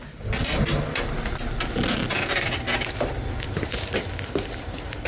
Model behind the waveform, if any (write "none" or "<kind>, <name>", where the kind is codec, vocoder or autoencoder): none